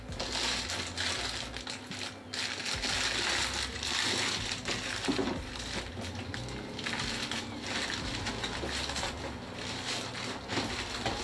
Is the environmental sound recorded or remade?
recorded